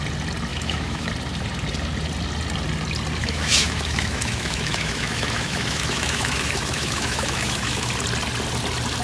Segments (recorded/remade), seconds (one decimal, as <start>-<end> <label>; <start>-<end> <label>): 0.0-0.5 recorded; 0.5-1.1 remade; 1.1-3.2 recorded; 3.2-7.9 remade; 7.9-9.0 recorded